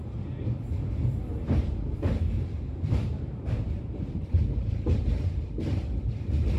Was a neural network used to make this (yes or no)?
yes